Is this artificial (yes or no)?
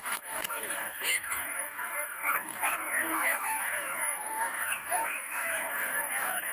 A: yes